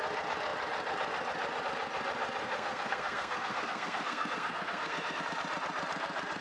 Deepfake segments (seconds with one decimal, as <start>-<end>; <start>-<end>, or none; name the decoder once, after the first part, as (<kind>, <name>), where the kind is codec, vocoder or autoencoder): 2.4-5.2 (codec, SNAC)